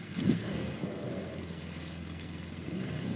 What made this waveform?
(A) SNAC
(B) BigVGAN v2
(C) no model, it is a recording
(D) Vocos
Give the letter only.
A